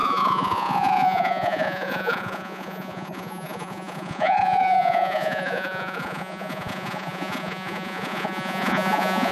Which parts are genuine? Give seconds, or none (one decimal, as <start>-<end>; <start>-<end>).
none